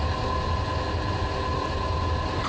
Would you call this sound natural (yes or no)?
yes